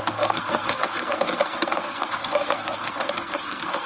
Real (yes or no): no